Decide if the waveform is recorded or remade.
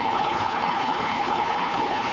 remade